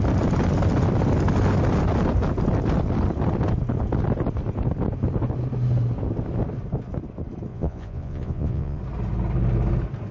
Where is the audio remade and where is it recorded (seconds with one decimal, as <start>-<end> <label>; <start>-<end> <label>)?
0.0-7.5 recorded; 7.5-8.8 remade; 8.8-10.1 recorded